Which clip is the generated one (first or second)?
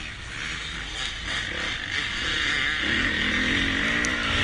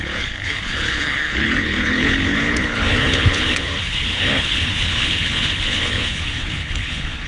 second